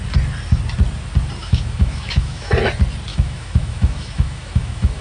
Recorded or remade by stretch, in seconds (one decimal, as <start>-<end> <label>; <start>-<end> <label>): 0.0-1.4 recorded; 1.4-2.5 remade; 2.5-3.1 recorded; 3.1-5.0 remade